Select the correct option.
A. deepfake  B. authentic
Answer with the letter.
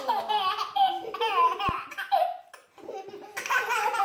B